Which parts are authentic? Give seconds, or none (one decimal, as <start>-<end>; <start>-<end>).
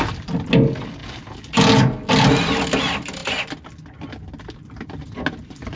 0.0-5.8